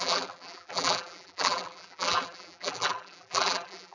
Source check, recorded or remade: remade